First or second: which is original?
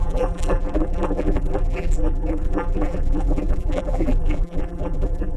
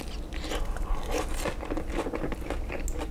second